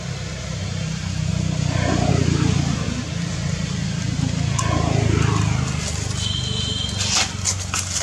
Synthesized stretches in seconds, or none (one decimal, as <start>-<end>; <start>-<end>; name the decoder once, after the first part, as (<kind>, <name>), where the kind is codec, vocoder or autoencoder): none